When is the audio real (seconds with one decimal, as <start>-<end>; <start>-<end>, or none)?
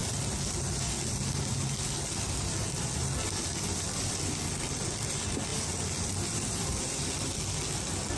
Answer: 0.0-8.2